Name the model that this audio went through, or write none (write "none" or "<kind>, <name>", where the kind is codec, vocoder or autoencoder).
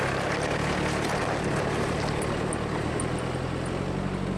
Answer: none